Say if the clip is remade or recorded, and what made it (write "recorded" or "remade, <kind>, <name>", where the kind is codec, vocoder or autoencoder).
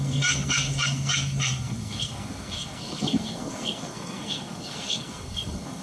remade, codec, SNAC